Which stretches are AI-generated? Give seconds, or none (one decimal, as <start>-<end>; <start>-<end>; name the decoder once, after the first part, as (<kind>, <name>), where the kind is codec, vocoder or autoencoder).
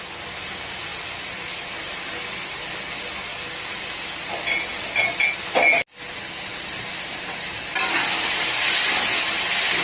0.9-1.7 (vocoder, BigVGAN v2); 3.3-4.3